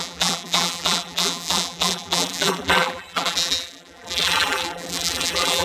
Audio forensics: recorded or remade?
remade